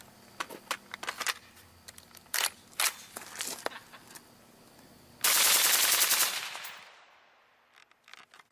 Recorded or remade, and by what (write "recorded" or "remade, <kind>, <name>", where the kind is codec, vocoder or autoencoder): recorded